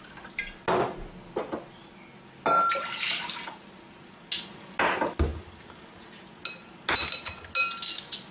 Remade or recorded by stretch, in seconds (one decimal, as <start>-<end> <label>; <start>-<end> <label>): 0.0-8.3 recorded